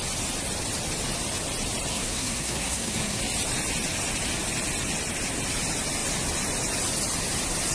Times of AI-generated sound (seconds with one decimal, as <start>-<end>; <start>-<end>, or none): 1.9-3.2